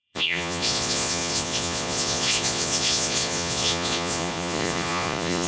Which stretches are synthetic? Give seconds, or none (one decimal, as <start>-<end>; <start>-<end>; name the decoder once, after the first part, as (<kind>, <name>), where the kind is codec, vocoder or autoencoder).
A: 0.0-5.5 (vocoder, Vocos)